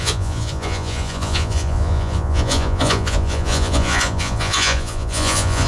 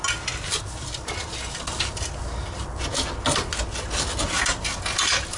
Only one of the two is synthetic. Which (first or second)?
first